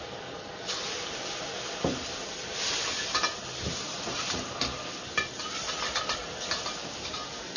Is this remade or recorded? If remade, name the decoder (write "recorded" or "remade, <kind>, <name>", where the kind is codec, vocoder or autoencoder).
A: recorded